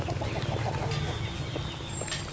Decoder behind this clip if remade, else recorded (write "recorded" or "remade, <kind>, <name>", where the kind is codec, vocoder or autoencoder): recorded